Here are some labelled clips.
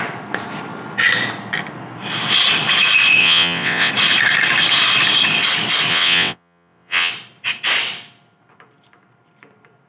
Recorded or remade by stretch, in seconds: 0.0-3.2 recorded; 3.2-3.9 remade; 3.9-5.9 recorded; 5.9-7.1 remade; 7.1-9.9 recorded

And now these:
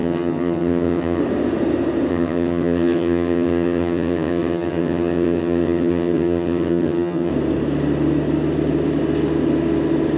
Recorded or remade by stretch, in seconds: 0.0-1.2 remade; 1.2-2.1 recorded; 2.1-7.3 remade; 7.3-10.2 recorded

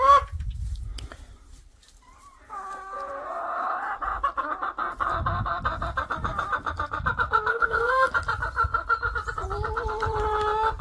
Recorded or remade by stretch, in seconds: 0.0-7.5 recorded; 7.5-8.1 remade; 8.1-10.8 recorded